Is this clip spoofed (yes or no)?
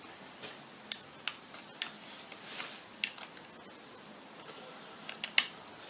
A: no